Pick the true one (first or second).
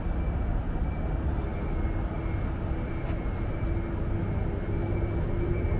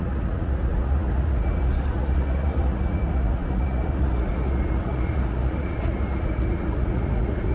first